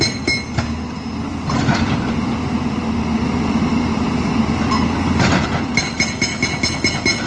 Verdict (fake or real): real